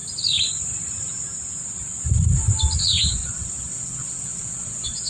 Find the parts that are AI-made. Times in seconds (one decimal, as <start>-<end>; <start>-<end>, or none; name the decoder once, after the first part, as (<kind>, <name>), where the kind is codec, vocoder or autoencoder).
2.8-5.1 (vocoder, WaveNeXt)